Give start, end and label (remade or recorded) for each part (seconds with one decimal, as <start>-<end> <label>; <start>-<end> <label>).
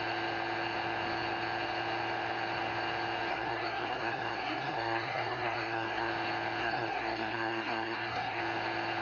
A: 0.0-3.3 recorded; 3.3-6.1 remade; 6.1-6.6 recorded; 6.6-8.4 remade; 8.4-9.0 recorded